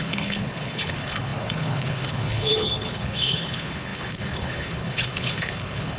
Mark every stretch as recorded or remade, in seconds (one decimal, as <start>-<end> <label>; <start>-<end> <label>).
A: 0.0-6.0 remade